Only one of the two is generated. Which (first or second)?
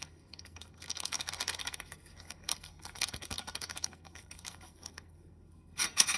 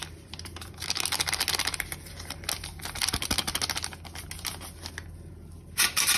first